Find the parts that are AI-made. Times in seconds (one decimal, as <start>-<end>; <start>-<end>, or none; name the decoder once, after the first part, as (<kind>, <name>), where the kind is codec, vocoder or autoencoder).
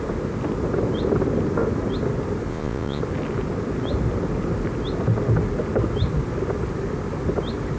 2.5-3.0 (vocoder, Vocos)